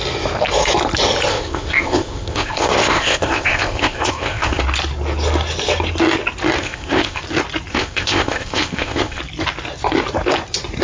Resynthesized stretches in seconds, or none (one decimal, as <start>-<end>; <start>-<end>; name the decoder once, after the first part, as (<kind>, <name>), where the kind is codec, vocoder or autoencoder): 1.3-4.6 (codec, ZipCodec); 6.6-7.2; 7.7-9.2